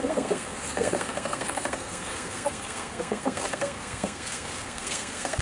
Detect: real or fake fake